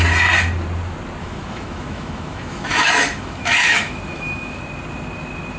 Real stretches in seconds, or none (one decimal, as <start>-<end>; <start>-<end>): 0.0-1.2; 4.6-5.6

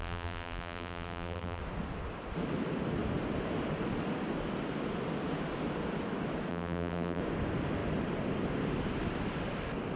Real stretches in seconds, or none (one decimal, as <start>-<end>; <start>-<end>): 1.6-6.5; 7.2-10.0

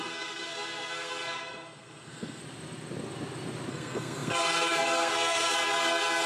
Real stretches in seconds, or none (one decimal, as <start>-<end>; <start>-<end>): 2.4-3.7

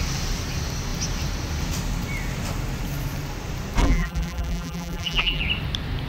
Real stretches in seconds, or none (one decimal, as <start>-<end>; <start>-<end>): 0.0-3.8; 5.4-6.1

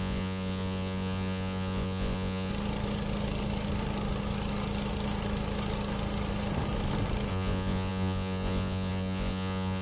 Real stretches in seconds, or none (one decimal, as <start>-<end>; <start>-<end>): 2.5-7.3

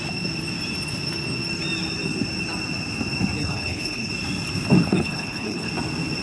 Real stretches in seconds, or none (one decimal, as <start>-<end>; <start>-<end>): 0.0-3.4; 4.1-4.9; 5.7-6.2

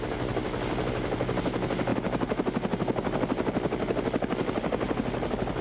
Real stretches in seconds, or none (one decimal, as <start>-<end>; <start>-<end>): 0.0-5.6

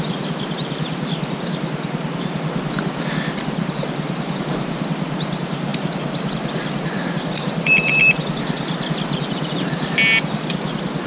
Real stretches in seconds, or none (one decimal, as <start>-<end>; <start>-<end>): 0.0-11.1